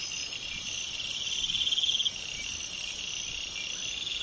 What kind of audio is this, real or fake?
real